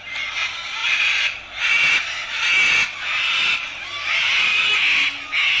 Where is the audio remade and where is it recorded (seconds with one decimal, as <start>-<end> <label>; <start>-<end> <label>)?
0.0-0.8 recorded; 0.8-1.7 remade; 1.7-3.7 recorded; 3.7-4.2 remade; 4.2-5.6 recorded